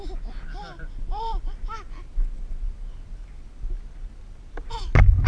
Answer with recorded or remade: recorded